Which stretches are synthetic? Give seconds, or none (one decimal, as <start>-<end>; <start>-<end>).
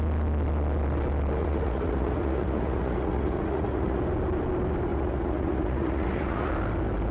1.4-4.0; 4.9-6.5